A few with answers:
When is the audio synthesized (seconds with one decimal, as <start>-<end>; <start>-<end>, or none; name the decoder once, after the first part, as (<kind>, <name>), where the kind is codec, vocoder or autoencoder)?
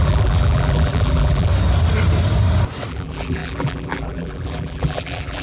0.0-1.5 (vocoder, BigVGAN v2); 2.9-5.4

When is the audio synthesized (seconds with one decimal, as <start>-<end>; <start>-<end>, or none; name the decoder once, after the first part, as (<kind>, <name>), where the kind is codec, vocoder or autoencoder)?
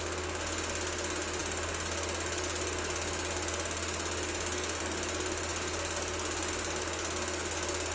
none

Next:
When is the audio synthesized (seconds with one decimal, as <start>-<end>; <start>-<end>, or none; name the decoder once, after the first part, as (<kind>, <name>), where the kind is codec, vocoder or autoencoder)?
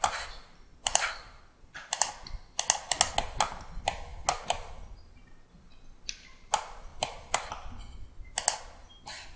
0.7-2.4 (vocoder, BigVGAN v2); 6.9-7.5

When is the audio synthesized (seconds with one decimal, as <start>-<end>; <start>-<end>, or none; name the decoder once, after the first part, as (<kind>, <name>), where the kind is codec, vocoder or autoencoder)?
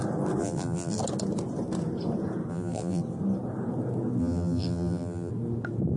0.4-1.0 (vocoder, BigVGAN v2); 2.5-3.0; 4.2-5.3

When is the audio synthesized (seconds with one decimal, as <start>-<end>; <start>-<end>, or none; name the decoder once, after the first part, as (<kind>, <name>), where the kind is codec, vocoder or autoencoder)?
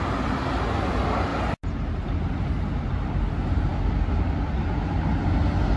none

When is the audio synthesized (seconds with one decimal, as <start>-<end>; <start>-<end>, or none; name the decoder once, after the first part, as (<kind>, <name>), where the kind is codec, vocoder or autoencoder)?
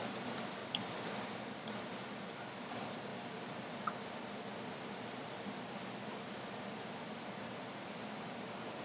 0.0-0.6 (vocoder, BigVGAN v2); 2.6-3.1; 7.1-8.8